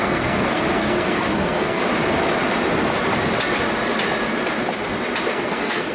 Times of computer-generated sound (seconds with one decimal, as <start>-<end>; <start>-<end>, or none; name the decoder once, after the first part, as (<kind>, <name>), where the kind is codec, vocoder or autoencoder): 0.0-1.8 (codec, SNAC); 5.3-5.9